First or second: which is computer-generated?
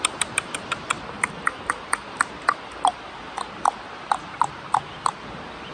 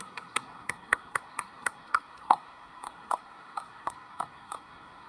second